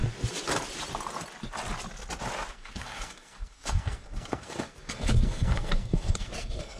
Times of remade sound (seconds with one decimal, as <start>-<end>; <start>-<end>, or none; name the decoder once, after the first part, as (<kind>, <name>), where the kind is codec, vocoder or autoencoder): 2.5-6.8 (codec, SNAC)